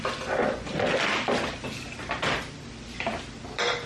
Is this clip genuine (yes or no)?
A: yes